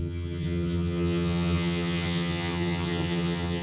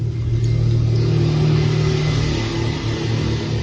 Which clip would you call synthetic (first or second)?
first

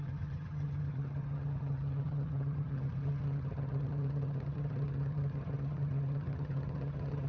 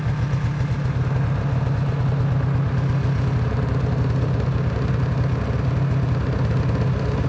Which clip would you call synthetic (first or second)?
first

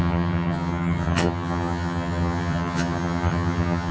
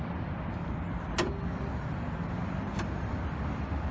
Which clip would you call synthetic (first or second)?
first